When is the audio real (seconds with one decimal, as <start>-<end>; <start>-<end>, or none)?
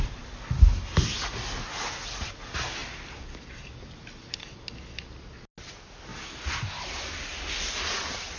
0.0-8.4